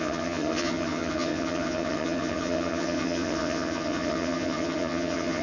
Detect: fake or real fake